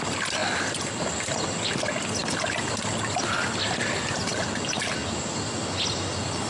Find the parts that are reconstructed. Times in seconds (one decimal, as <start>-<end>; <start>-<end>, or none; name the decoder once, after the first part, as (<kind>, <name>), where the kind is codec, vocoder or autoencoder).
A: none